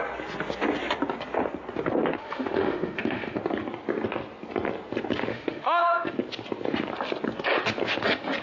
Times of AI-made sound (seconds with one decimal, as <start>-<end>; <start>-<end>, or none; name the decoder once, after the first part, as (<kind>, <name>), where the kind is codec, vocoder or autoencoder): 2.2-3.4 (autoencoder, DAC-VAE); 5.3-6.1